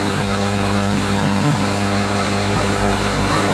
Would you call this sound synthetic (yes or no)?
yes